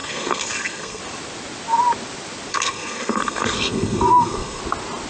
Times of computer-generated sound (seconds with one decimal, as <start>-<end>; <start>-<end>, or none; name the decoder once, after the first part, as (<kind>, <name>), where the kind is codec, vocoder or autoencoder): 0.0-1.0 (codec, SNAC); 2.5-4.6